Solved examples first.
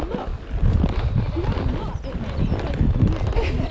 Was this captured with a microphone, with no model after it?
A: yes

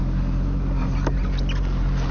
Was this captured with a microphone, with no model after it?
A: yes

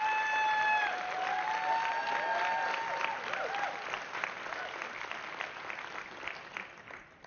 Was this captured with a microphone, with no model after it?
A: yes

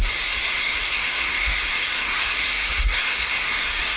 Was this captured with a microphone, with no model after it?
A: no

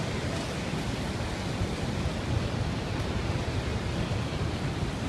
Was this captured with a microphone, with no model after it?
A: yes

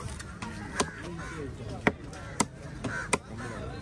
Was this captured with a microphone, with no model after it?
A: yes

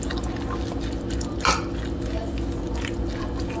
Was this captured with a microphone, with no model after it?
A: yes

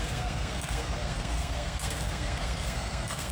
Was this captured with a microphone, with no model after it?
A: no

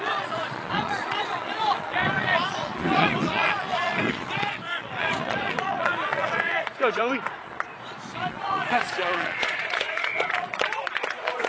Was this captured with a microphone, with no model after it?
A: no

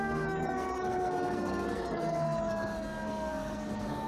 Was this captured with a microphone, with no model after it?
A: no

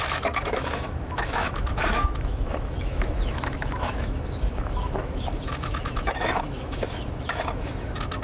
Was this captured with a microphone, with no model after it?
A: no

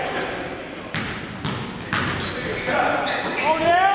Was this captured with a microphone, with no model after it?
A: yes